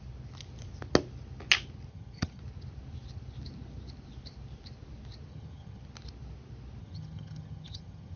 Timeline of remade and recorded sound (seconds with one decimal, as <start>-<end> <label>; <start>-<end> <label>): 0.0-1.9 recorded; 1.9-2.4 remade; 2.4-5.3 recorded; 5.3-5.8 remade; 5.8-6.8 recorded; 6.8-8.2 remade